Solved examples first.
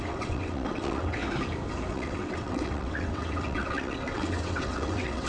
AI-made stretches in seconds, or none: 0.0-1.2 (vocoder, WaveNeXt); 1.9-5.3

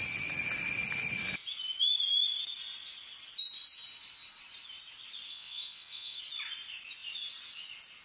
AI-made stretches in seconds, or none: 5.3-6.2 (vocoder, WaveNeXt)

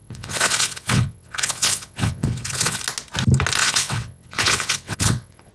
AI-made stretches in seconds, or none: 0.0-2.8 (vocoder, WaveNeXt); 3.6-5.5

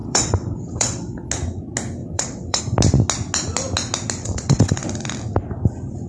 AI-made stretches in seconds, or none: 0.0-1.3 (vocoder, WaveNeXt); 2.0-2.6; 4.2-4.8

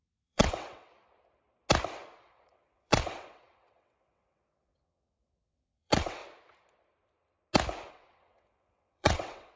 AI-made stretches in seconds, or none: 0.0-0.9 (vocoder, WaveNeXt); 2.2-6.2; 7.9-9.6